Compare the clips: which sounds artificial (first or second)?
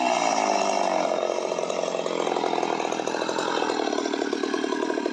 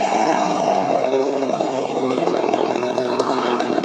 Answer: second